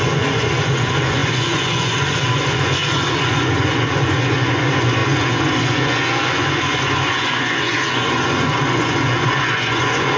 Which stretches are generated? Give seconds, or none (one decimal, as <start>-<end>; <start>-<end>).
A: 0.0-10.2